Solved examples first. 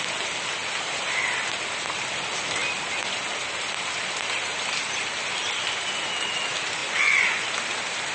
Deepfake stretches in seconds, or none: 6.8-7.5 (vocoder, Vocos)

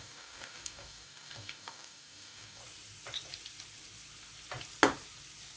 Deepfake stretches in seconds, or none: 0.0-2.6 (codec, DAC)

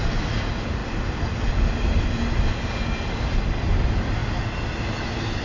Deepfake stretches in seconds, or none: none

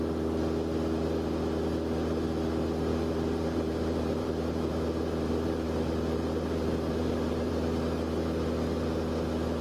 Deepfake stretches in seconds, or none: 2.9-7.5 (vocoder, BigVGAN v2)

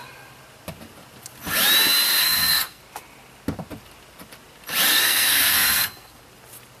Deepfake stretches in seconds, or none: 2.2-2.8 (codec, SNAC); 4.9-6.2